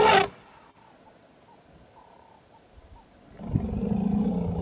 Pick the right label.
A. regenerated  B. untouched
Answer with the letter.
B